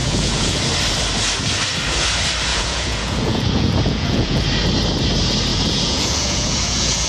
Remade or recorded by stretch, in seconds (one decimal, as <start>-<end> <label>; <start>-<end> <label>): 0.0-0.6 remade; 0.6-2.5 recorded; 2.5-4.4 remade; 4.4-5.5 recorded; 5.5-7.1 remade